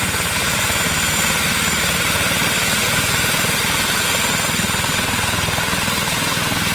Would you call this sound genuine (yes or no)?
yes